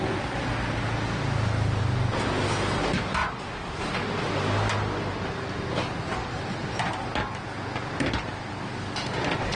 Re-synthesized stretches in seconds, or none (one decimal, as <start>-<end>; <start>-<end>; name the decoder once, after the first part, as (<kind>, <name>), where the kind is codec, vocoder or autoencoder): 3.2-3.8 (vocoder, BigVGAN v2)